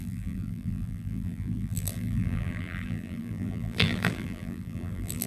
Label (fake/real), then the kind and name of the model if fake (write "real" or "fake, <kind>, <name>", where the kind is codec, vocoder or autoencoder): fake, vocoder, BigVGAN v2